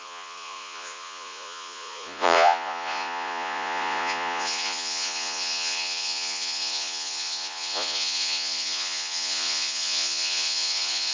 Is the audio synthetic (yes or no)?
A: yes